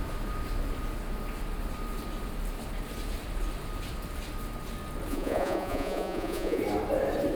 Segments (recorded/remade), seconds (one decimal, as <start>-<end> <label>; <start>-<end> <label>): 0.0-5.1 recorded; 5.1-6.6 remade; 6.6-7.4 recorded